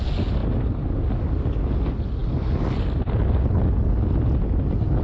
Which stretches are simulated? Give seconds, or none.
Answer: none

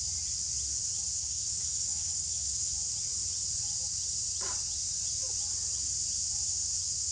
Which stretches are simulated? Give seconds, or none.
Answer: 1.2-2.7 (codec, DAC)

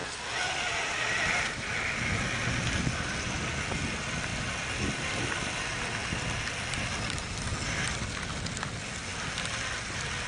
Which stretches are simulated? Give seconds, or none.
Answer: none

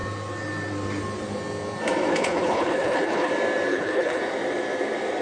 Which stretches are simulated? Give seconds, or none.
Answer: 2.1-3.3 (codec, HILCodec); 3.7-4.2

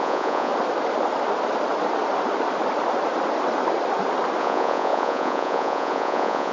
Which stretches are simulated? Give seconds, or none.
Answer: 0.0-0.5 (vocoder, Vocos); 4.4-6.5

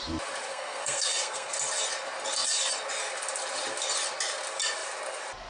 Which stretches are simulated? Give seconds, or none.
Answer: 0.5-1.5 (codec, SNAC)